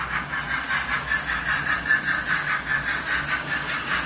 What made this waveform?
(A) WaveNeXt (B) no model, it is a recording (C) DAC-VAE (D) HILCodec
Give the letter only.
B